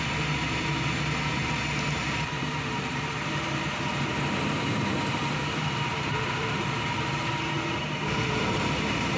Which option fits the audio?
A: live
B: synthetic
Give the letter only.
B